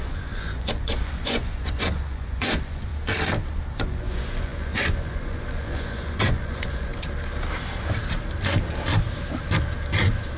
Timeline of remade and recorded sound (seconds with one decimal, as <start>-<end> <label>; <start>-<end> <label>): 0.0-2.9 remade; 2.9-3.7 recorded; 3.7-6.9 remade; 6.9-10.4 recorded